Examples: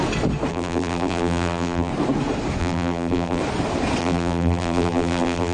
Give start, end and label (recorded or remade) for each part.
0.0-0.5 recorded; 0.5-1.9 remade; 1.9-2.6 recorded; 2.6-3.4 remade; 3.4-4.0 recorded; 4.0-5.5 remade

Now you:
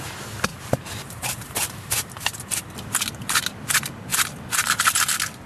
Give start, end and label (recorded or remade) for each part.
0.0-0.5 recorded; 0.5-2.1 remade; 2.1-5.5 recorded

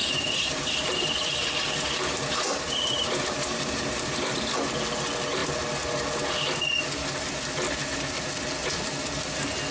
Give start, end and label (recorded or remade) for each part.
0.0-4.5 remade; 4.5-9.7 recorded

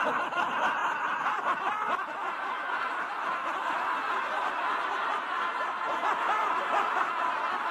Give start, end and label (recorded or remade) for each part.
0.0-7.7 recorded

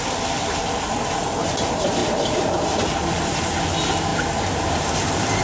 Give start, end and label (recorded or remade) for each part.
0.0-2.0 recorded; 2.0-3.6 remade; 3.6-5.4 recorded

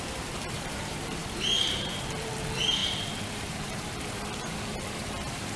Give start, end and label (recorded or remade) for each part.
0.0-2.8 remade; 2.8-3.3 recorded; 3.3-5.6 remade

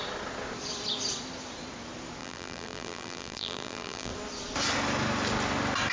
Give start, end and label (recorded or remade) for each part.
0.0-2.2 recorded; 2.2-4.1 remade; 4.1-5.9 recorded